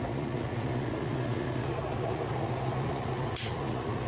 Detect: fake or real fake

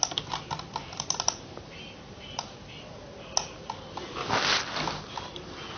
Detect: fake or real real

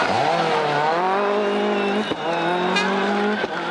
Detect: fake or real real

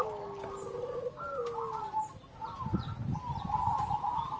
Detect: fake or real real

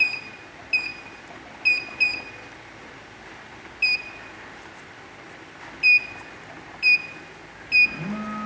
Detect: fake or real real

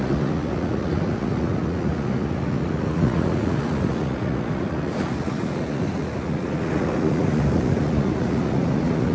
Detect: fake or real fake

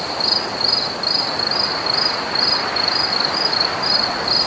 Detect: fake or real real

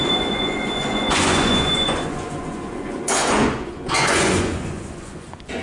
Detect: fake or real fake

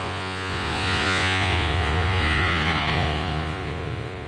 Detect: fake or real fake